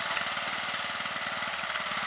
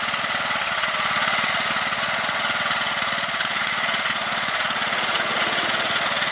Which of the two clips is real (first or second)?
first